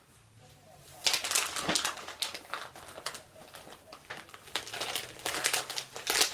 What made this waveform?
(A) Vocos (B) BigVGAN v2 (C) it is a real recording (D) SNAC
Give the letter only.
C